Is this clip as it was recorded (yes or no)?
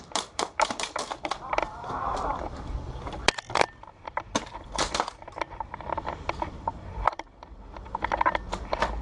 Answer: no